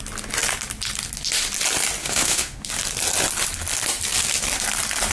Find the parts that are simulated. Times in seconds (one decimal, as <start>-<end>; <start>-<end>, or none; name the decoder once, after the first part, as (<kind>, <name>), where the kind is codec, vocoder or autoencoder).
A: 2.0-2.7 (autoencoder, DAC-VAE)